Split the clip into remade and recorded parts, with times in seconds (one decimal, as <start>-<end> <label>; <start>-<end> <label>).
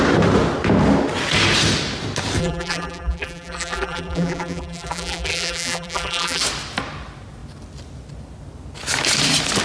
0.0-2.4 recorded; 2.4-6.4 remade; 6.4-9.6 recorded